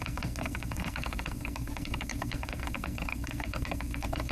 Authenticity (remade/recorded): remade